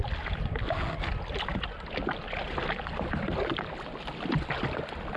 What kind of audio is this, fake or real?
real